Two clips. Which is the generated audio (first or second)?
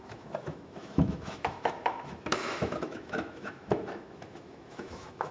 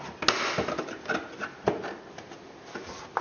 first